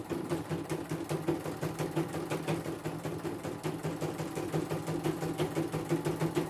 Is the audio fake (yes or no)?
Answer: no